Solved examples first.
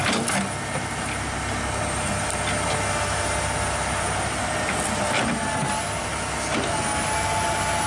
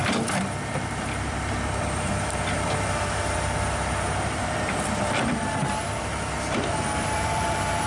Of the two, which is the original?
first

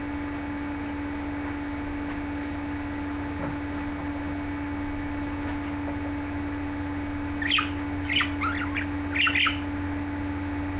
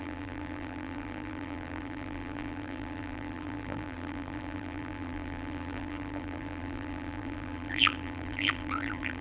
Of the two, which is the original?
first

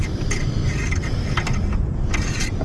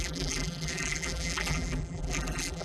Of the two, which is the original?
first